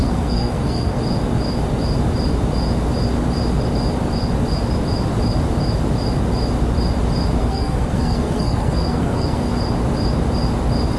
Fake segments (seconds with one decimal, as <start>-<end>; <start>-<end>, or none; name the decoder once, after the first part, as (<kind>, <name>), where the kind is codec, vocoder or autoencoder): 0.0-1.0 (codec, SNAC); 7.4-9.5